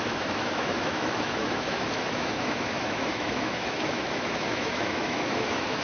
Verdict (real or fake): fake